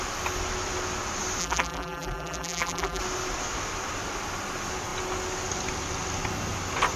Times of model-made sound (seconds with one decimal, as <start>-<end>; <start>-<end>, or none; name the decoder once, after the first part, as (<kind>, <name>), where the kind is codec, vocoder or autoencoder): 1.4-3.0 (vocoder, BigVGAN v2)